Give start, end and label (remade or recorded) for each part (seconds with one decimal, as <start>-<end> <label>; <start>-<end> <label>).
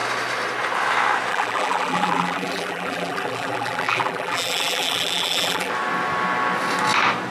0.0-1.3 recorded; 1.3-5.7 remade; 5.7-7.3 recorded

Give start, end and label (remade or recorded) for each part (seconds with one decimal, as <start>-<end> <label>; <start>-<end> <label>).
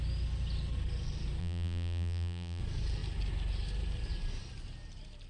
0.0-1.4 recorded; 1.4-2.6 remade; 2.6-5.3 recorded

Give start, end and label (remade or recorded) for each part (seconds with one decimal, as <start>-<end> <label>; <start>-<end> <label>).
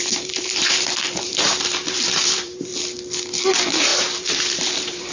0.0-2.7 remade; 2.7-3.5 recorded; 3.5-5.1 remade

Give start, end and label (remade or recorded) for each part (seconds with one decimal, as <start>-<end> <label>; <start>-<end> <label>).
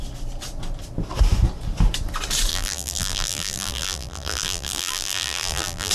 0.0-2.5 recorded; 2.5-5.9 remade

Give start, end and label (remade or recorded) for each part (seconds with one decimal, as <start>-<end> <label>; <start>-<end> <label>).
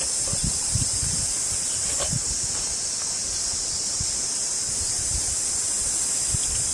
0.0-6.7 recorded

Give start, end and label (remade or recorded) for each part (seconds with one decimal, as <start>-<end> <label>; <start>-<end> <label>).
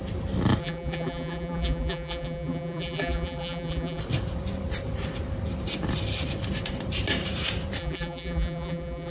0.0-0.6 recorded; 0.6-4.0 remade; 4.0-7.8 recorded; 7.8-9.1 remade